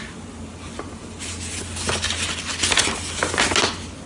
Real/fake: real